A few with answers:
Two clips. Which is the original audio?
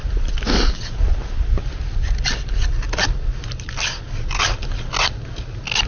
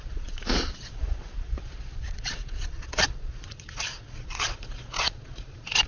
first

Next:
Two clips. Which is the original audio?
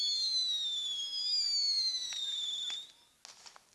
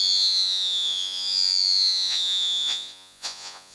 first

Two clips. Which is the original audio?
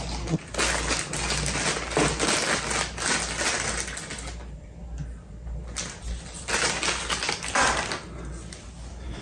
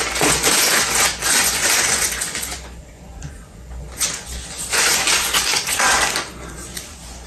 first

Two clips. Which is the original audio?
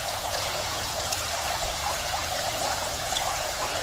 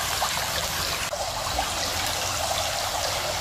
second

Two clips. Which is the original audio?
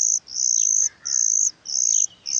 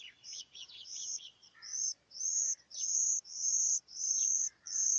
first